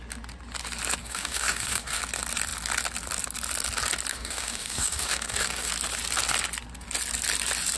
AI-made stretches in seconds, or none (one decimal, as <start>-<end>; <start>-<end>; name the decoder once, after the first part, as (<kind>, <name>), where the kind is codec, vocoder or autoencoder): 1.0-2.0 (codec, DAC); 4.1-5.7